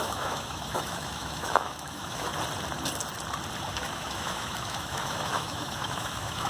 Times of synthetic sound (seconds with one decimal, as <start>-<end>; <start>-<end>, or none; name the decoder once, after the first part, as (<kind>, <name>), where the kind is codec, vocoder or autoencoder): 0.0-2.3 (autoencoder, DAC-VAE); 3.8-6.5